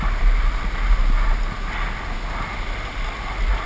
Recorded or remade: recorded